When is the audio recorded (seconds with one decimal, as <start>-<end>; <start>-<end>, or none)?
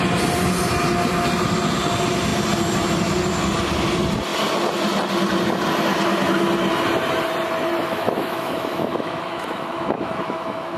0.0-7.8